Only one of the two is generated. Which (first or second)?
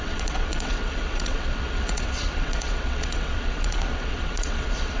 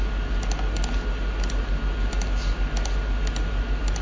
first